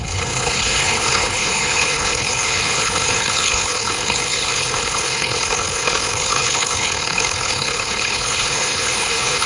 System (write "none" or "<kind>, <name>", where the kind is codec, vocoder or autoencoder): codec, HILCodec